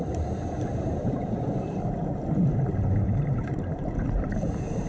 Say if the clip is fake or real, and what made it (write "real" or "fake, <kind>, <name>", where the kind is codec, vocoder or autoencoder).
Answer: fake, vocoder, BigVGAN v2